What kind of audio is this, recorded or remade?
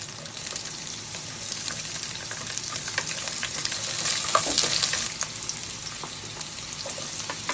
recorded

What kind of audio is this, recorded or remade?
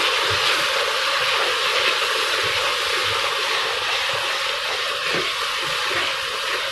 recorded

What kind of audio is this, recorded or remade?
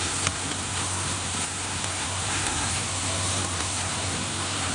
remade